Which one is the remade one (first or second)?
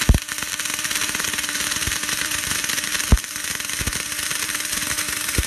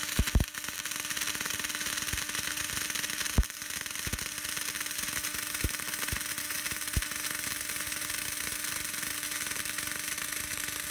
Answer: first